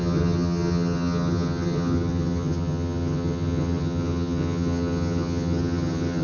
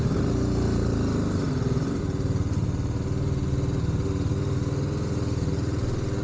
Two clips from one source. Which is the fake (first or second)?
first